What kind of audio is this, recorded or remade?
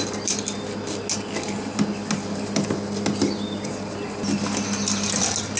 recorded